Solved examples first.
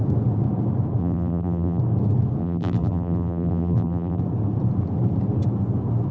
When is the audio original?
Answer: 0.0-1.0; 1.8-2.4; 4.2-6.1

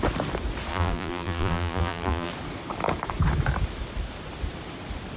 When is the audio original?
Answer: 0.0-0.7; 2.3-5.2

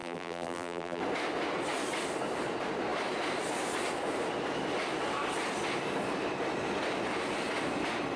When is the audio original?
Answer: 1.0-8.2

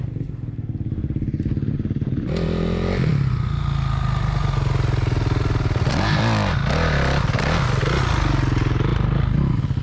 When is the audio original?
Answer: 0.0-9.8

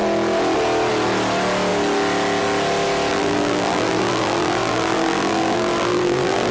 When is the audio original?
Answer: 0.0-3.1

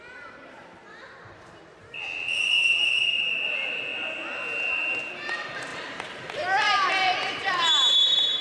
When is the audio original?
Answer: 3.9-4.6

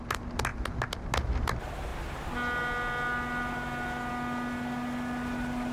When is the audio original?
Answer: 0.0-5.7

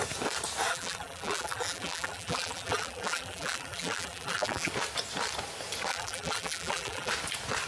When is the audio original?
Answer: 0.0-0.7; 4.7-5.9; 7.1-7.7